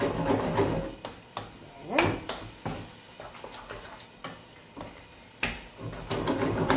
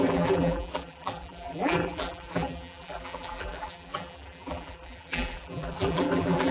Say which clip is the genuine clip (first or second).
first